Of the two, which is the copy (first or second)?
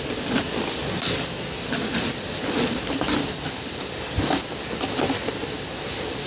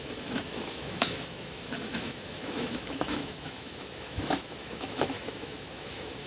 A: second